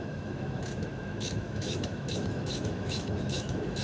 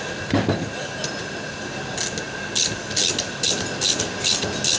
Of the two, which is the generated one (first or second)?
first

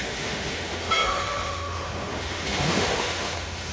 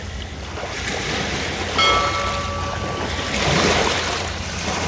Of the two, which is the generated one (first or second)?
first